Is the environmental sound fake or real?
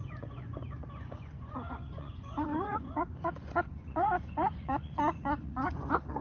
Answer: fake